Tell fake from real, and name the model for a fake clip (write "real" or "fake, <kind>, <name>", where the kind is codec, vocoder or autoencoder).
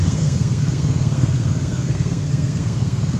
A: fake, codec, SNAC